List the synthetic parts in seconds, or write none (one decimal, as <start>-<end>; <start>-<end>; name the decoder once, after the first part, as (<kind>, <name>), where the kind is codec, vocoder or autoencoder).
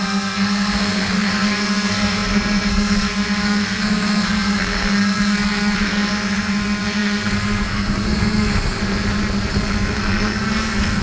0.0-8.8 (codec, SNAC); 9.5-11.0